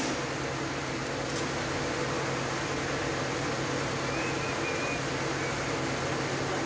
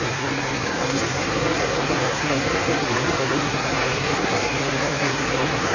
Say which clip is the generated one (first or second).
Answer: second